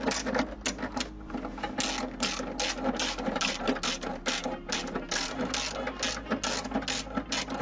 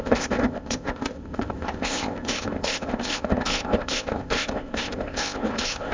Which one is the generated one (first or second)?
second